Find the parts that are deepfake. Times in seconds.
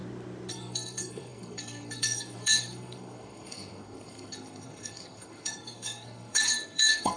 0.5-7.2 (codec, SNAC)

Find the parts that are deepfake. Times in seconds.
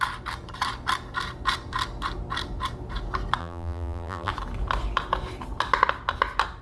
3.4-4.3 (vocoder, BigVGAN v2)